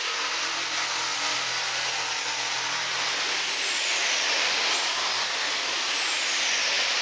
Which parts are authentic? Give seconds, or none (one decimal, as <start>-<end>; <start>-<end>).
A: 0.0-7.0

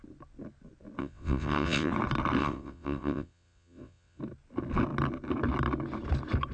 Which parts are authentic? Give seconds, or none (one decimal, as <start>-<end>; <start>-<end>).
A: 0.0-1.0; 1.9-2.4; 4.2-6.5

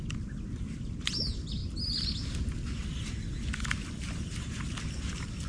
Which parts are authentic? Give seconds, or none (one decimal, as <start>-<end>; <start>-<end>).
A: 0.0-5.5

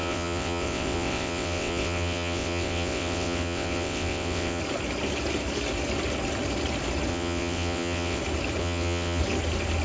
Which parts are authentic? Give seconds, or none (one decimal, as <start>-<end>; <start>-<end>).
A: 4.6-7.1; 8.2-8.6; 9.2-9.8

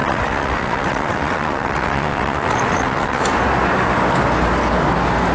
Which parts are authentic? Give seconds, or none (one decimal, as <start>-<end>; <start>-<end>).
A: 3.2-5.3

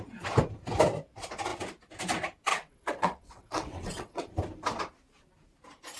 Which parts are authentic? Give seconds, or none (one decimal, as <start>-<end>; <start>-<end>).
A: 0.0-2.5; 4.3-6.0

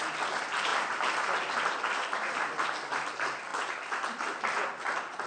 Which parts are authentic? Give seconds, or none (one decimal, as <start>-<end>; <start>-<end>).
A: 0.0-5.3